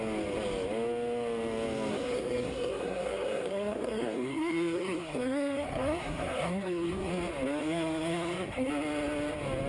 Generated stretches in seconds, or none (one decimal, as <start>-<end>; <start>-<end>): 1.9-7.1; 7.6-8.7